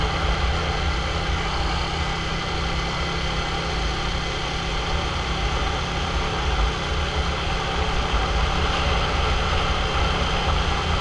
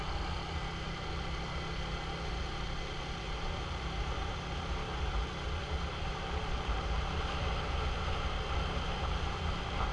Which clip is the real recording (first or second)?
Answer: first